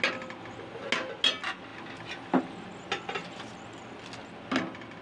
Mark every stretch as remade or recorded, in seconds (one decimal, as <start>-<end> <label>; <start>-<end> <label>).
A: 0.0-5.0 recorded